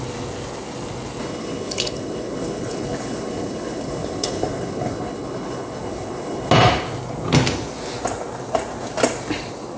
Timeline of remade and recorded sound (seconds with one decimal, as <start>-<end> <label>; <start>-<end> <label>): 0.0-1.2 recorded; 1.2-6.5 remade; 6.5-9.8 recorded